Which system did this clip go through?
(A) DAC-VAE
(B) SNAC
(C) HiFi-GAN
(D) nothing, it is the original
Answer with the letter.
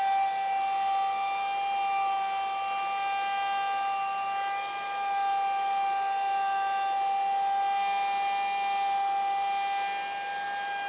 D